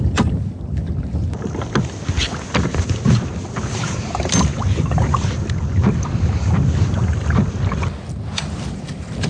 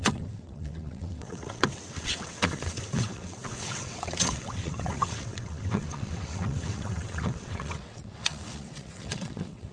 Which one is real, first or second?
first